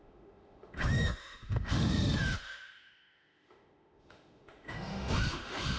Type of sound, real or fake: fake